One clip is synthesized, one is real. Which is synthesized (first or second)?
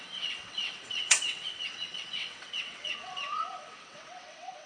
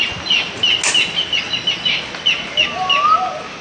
first